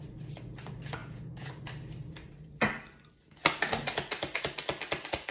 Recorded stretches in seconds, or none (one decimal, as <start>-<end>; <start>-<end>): 0.0-1.0; 1.5-5.3